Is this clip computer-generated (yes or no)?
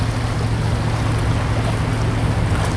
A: no